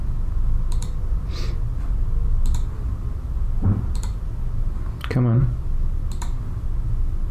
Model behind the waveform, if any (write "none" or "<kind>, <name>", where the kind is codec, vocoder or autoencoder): none